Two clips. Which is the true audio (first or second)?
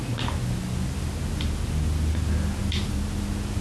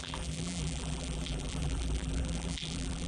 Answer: first